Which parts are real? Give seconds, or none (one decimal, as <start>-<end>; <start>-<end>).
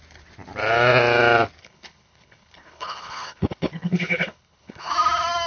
0.0-1.6; 4.9-5.5